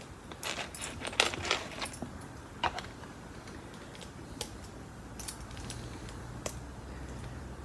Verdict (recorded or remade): recorded